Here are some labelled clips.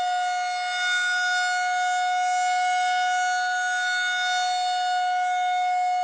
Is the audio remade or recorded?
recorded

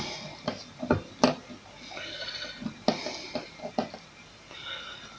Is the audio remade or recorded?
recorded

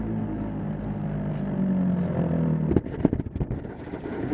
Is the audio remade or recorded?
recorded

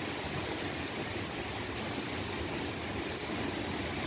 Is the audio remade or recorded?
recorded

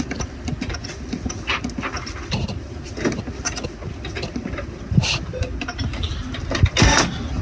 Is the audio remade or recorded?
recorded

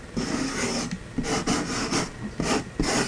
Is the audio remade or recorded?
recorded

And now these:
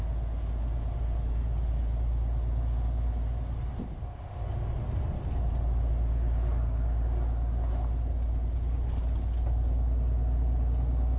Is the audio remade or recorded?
recorded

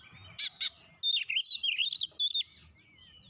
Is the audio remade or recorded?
recorded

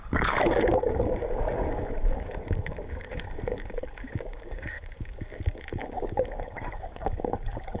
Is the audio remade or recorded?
remade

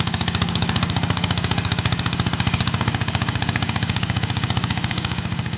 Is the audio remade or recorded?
remade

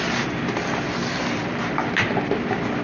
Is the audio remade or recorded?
recorded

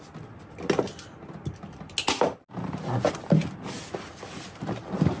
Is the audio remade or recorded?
recorded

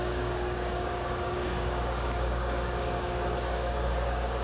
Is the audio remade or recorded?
remade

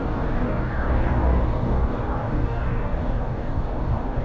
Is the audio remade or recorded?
remade